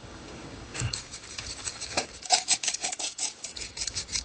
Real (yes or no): no